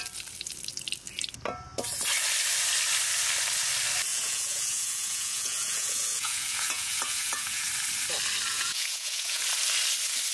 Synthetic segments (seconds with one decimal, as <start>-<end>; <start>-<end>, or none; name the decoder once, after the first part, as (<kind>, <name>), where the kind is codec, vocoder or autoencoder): 4.1-7.7 (vocoder, Vocos); 8.5-9.4